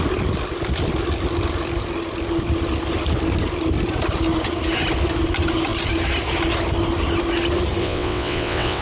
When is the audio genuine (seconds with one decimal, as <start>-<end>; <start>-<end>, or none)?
0.0-7.8